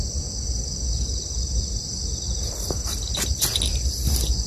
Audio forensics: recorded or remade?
recorded